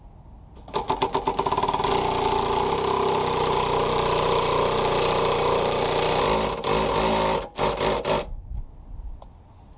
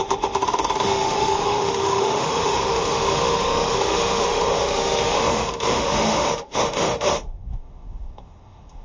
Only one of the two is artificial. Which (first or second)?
second